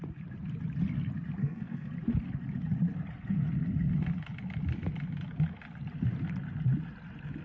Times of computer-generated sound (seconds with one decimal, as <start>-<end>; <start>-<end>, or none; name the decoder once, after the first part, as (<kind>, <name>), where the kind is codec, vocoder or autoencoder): 1.4-1.9 (codec, SNAC)

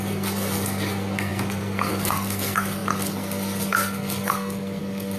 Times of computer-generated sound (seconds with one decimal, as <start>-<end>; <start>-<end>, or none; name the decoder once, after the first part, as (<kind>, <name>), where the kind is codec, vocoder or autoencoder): 0.0-5.2 (codec, SNAC)

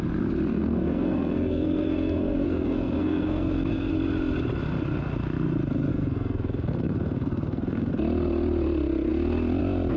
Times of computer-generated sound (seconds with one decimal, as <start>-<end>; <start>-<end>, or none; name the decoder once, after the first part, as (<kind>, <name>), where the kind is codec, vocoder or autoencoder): 0.5-3.9 (codec, SNAC); 5.9-7.9